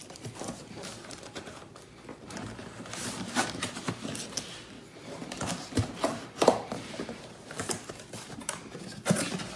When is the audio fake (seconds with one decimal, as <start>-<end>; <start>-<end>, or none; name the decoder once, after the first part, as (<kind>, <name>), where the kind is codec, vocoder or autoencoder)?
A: 0.0-4.1 (vocoder, BigVGAN v2); 5.2-8.3